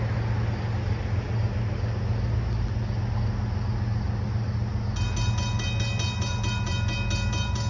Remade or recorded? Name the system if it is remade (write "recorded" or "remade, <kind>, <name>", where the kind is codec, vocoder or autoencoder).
recorded